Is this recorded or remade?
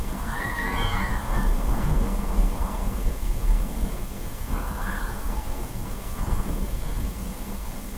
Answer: remade